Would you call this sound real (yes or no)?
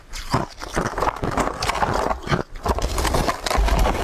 yes